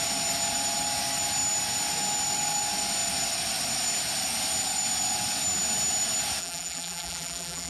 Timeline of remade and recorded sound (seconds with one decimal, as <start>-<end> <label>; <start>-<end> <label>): 0.0-6.4 recorded; 6.4-7.7 remade